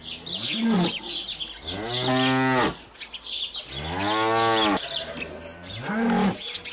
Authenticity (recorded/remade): recorded